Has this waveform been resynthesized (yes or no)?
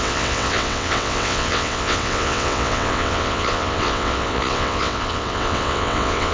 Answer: yes